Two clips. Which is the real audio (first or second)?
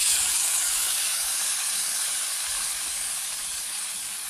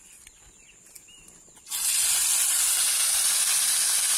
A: second